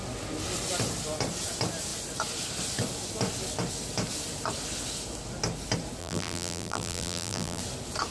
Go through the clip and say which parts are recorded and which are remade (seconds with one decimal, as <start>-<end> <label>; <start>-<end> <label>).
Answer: 0.0-6.0 recorded; 6.0-7.6 remade; 7.6-8.1 recorded